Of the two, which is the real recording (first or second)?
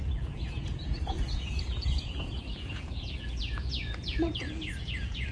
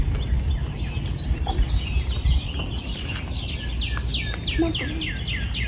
second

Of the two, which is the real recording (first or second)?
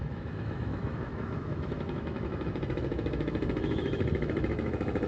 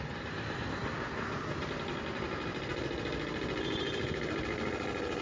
second